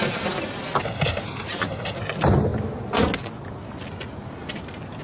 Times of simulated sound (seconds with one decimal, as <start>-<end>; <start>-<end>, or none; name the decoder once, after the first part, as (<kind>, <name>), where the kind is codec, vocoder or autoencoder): none

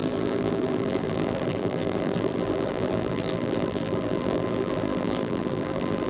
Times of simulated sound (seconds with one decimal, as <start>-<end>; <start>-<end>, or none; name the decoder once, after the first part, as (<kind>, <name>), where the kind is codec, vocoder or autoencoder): 0.0-6.1 (vocoder, BigVGAN v2)